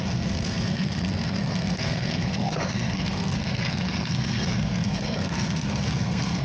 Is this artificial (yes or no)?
yes